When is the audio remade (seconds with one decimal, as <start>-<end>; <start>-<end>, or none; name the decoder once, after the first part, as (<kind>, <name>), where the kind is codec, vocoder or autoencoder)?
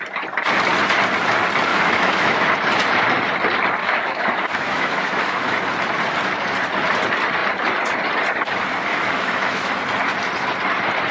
1.7-2.5 (autoencoder, DAC-VAE); 3.8-5.6; 8.9-9.7